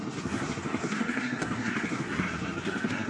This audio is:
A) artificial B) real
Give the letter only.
A